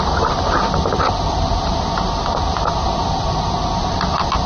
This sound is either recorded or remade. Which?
recorded